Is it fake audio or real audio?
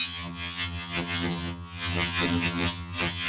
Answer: fake